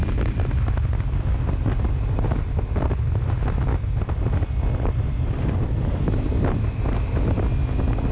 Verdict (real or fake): real